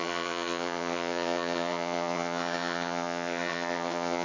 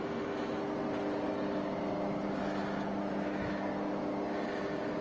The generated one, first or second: first